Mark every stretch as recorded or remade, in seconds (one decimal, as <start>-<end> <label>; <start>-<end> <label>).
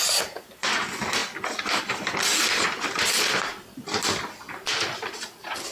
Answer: 0.0-5.7 recorded